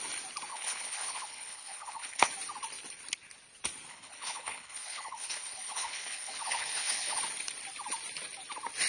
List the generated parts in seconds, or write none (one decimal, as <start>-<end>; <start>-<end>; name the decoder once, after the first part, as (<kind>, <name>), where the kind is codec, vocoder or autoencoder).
0.5-2.3 (codec, HILCodec); 3.9-7.2